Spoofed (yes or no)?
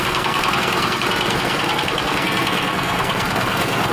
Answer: yes